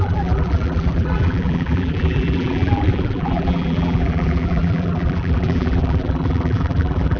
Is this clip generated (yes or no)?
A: yes